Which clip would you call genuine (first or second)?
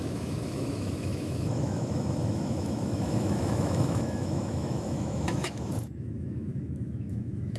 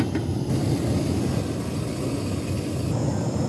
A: second